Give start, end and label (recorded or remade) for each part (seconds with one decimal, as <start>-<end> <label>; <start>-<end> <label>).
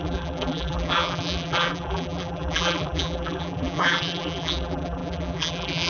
0.0-5.9 remade